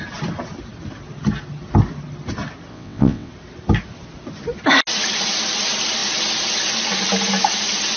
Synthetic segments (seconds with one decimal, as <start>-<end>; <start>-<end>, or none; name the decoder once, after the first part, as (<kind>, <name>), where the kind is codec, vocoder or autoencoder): 2.7-3.3 (vocoder, WaveNeXt)